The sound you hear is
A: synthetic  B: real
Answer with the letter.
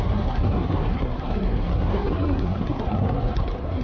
A